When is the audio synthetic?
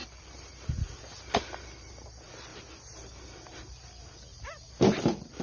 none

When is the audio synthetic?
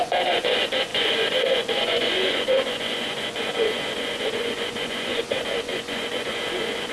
0.0-6.9 (vocoder, Vocos)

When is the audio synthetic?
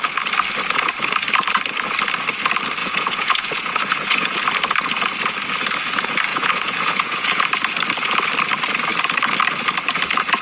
2.8-4.4 (vocoder, Vocos); 6.3-7.4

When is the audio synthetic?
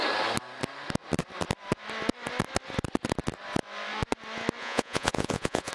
4.6-5.7 (vocoder, Vocos)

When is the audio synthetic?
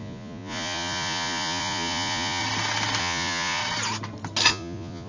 0.0-2.4 (vocoder, Vocos); 3.0-3.6; 4.5-5.1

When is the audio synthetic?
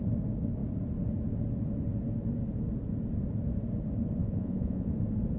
4.2-4.9 (vocoder, Vocos)